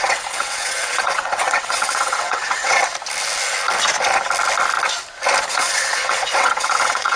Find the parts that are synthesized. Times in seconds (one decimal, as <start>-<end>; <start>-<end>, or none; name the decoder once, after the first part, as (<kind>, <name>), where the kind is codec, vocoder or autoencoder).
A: 0.0-2.8 (vocoder, WaveNeXt); 5.5-7.2